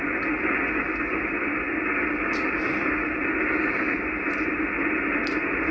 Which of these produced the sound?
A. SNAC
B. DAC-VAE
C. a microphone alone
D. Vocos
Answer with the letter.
C